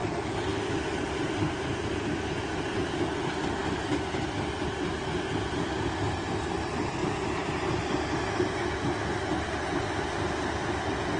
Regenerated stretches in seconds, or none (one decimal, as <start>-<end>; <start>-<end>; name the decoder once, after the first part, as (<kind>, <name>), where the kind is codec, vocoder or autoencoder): 0.0-1.5 (vocoder, BigVGAN v2); 3.6-4.3; 7.0-7.6